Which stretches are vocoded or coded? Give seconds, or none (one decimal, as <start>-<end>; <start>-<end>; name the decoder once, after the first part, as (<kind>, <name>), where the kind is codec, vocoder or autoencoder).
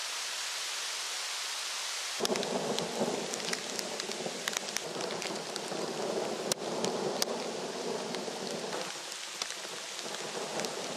none